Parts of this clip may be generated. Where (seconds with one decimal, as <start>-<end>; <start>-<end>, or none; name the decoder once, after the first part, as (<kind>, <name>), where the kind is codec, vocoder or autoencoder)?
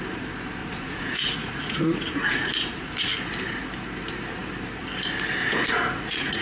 0.6-2.9 (vocoder, Vocos); 5.4-6.4